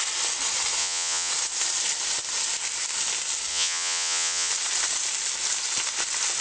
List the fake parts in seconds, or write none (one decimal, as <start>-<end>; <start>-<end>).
0.8-1.3; 3.5-4.5